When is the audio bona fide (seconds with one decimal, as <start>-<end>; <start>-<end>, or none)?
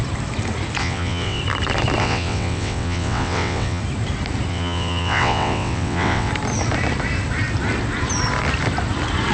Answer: 0.0-0.8; 1.4-2.0; 3.8-4.5; 6.3-9.3